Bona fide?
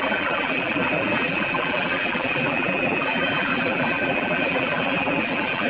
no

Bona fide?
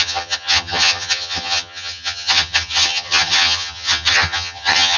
no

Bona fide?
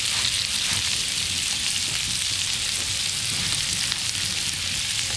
yes